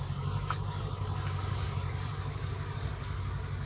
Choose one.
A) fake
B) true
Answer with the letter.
A